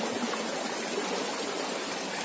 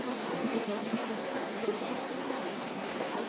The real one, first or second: first